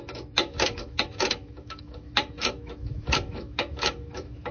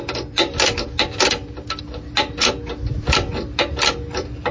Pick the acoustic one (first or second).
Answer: second